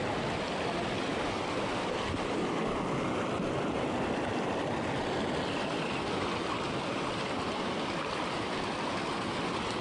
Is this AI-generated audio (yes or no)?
no